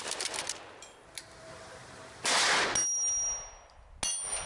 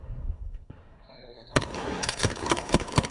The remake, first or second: second